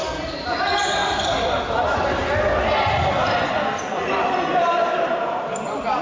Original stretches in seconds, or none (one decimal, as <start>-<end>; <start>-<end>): 0.0-6.0